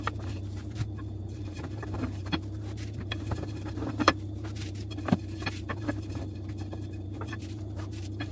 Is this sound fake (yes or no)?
yes